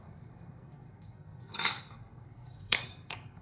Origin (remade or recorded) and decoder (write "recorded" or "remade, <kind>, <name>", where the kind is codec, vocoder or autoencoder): remade, codec, SNAC